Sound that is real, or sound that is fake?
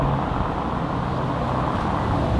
real